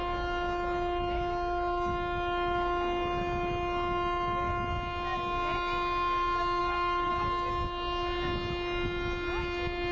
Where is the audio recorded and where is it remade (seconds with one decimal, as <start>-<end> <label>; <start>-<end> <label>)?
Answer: 0.0-6.6 recorded; 6.6-7.1 remade; 7.1-9.9 recorded